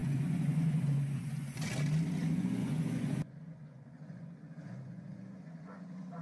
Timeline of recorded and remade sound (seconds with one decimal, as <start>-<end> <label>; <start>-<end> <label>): 0.0-1.7 remade; 1.7-2.2 recorded; 2.2-6.2 remade